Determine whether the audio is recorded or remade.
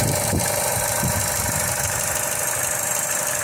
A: recorded